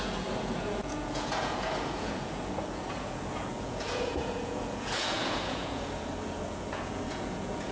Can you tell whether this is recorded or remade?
remade